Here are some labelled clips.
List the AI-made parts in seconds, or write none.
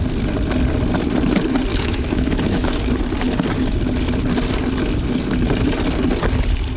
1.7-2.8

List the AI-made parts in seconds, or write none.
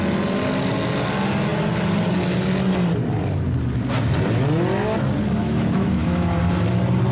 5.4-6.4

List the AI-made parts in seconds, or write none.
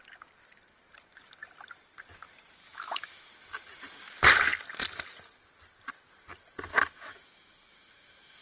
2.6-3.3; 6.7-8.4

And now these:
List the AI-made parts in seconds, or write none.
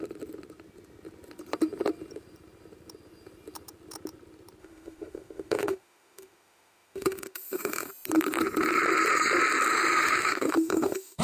4.6-7.9; 9.7-11.2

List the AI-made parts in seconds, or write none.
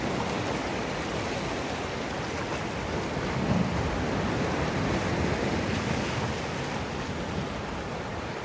none